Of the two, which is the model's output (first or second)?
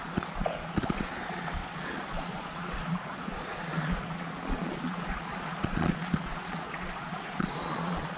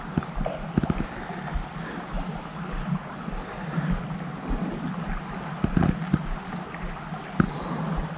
first